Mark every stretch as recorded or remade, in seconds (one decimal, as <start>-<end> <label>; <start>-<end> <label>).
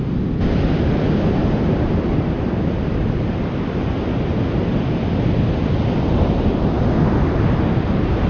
0.0-8.3 recorded